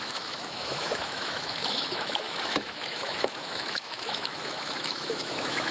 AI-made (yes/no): yes